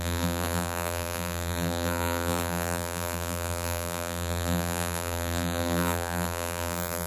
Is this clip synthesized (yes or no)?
yes